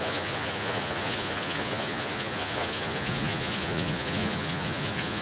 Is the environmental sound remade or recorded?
remade